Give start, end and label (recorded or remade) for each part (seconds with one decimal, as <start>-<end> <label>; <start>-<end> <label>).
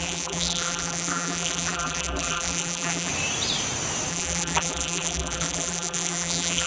0.0-3.1 remade; 3.1-4.1 recorded; 4.1-6.7 remade